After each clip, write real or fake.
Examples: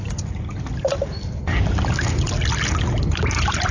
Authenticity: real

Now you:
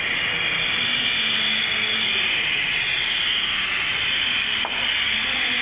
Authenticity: real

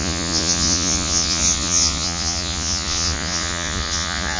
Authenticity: fake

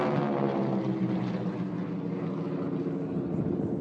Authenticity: real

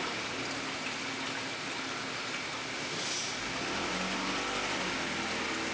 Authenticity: real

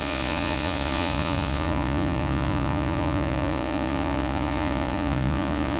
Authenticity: fake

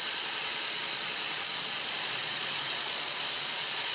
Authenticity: fake